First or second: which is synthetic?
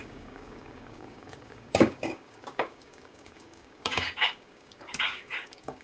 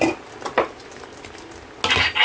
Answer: first